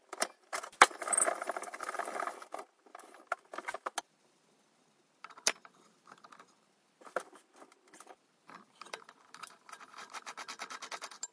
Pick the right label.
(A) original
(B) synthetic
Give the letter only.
A